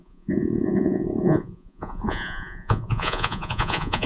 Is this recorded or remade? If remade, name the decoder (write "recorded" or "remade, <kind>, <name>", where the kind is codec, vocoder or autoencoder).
remade, vocoder, Vocos